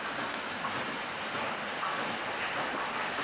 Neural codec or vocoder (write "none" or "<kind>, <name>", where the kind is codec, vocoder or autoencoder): none